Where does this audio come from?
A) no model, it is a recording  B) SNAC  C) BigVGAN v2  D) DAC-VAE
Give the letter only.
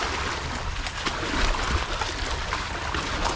A